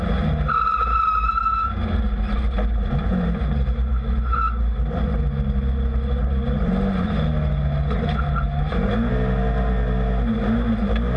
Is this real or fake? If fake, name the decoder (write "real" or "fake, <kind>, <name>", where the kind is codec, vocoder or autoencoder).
real